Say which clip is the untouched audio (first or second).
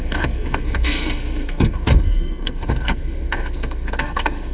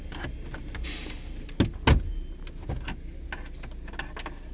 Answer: second